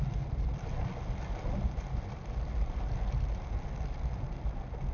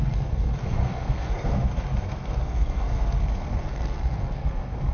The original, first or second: first